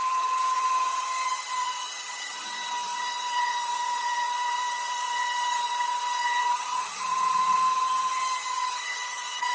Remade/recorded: remade